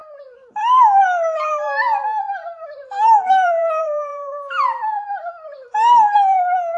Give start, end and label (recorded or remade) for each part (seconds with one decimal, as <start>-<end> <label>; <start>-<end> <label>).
0.0-6.8 remade